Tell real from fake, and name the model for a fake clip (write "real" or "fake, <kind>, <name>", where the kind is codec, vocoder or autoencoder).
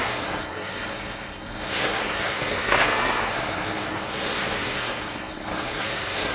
fake, codec, SNAC